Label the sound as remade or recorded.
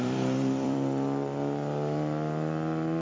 remade